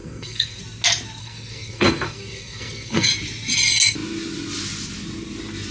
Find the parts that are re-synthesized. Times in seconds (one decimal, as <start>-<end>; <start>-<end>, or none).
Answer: 0.0-0.6; 1.2-3.1